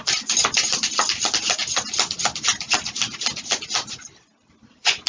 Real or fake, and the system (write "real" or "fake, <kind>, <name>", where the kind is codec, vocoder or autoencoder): real